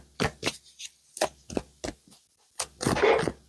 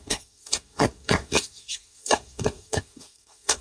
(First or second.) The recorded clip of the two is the first